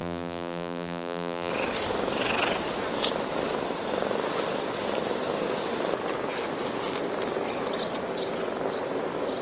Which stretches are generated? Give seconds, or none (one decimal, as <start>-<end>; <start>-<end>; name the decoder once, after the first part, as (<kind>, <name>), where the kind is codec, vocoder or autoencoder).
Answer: 0.0-1.5 (vocoder, BigVGAN v2)